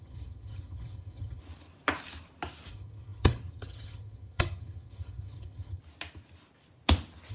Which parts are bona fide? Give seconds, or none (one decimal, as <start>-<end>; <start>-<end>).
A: 1.4-2.7; 5.8-7.3